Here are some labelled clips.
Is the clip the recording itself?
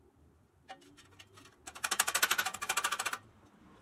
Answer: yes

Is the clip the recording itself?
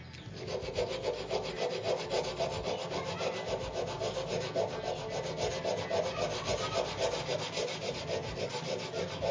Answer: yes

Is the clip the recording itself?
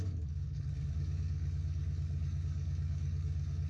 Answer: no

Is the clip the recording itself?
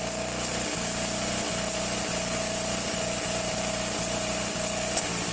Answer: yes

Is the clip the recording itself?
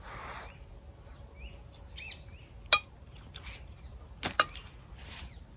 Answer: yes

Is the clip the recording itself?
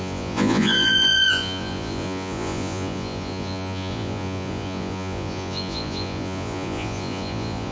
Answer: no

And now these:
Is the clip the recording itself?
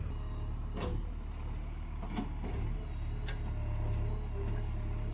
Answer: yes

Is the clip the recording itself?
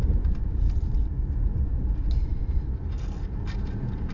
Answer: yes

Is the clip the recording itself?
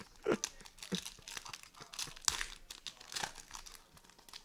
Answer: yes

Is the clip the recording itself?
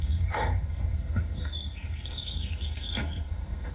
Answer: no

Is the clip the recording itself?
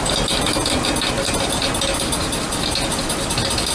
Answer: yes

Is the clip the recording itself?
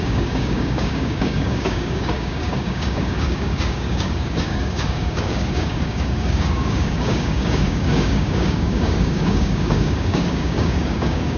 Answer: no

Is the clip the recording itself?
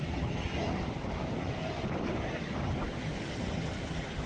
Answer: no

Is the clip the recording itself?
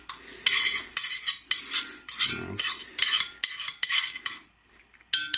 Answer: yes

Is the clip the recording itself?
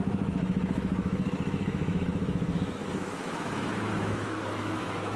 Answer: no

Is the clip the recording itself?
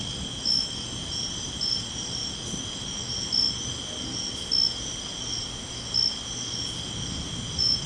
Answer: yes